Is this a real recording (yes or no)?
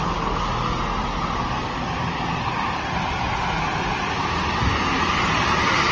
yes